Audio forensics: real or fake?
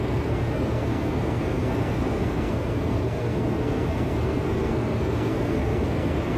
fake